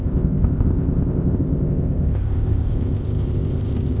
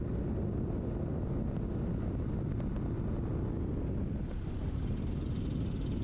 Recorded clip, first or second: second